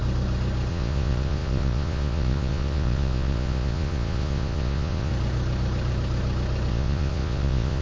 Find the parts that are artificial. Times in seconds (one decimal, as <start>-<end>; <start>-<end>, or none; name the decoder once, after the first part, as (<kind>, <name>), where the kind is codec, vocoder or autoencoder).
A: 0.7-5.1 (vocoder, Vocos); 6.7-7.8